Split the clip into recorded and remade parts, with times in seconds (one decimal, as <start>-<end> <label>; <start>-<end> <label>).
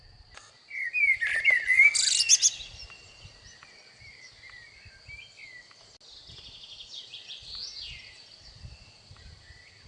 0.0-9.9 recorded